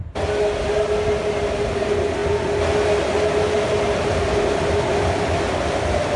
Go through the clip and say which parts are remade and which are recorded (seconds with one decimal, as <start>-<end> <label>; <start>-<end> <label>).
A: 0.0-6.2 recorded